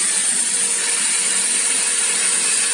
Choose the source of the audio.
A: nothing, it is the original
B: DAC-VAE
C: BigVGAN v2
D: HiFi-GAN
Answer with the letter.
A